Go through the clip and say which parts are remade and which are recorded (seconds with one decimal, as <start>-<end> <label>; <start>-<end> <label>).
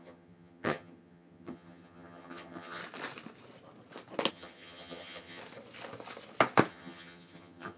0.0-2.8 remade; 2.8-4.3 recorded; 4.3-5.4 remade; 5.4-6.7 recorded; 6.7-7.8 remade